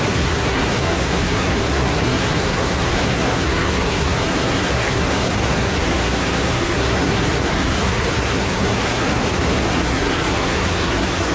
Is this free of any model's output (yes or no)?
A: no